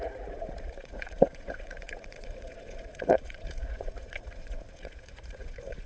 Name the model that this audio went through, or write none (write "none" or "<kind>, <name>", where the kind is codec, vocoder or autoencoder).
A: vocoder, Vocos